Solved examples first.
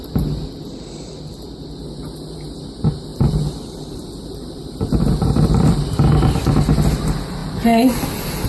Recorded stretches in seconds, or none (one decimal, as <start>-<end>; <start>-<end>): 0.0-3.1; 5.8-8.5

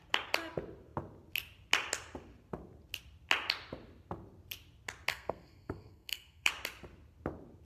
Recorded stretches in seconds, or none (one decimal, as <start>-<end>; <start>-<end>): 0.0-5.1; 6.5-7.6

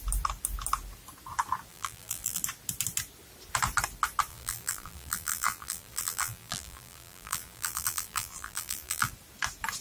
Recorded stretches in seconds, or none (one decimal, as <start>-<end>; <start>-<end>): 0.0-1.7; 2.4-4.3; 9.1-9.8